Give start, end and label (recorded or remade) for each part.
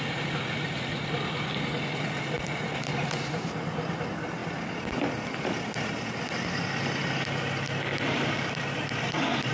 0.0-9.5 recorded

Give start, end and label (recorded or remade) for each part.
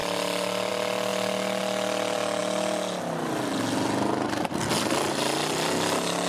0.0-6.3 recorded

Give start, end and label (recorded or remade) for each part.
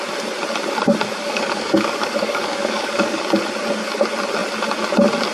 0.0-1.2 recorded; 1.2-3.2 remade; 3.2-5.3 recorded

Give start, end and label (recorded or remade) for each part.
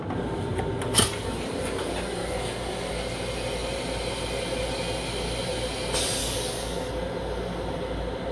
0.0-2.2 recorded; 2.2-2.9 remade; 2.9-6.2 recorded; 6.2-6.9 remade; 6.9-8.3 recorded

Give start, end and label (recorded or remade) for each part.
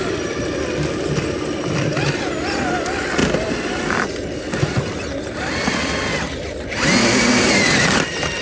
0.0-8.4 recorded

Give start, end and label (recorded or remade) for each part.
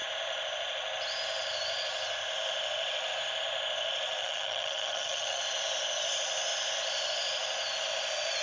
0.0-4.2 recorded; 4.2-5.4 remade; 5.4-8.4 recorded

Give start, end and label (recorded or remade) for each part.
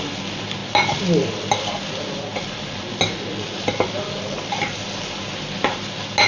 0.0-6.3 recorded